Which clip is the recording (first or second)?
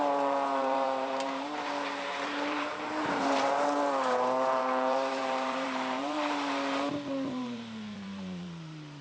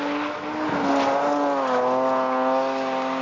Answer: second